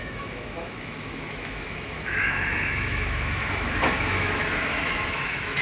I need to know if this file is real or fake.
fake